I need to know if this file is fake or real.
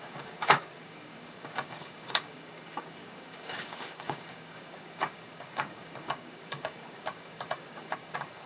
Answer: fake